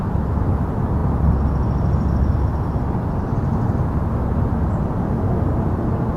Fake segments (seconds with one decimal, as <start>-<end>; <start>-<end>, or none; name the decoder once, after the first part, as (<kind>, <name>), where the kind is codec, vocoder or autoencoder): none